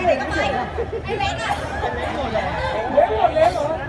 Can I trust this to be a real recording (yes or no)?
yes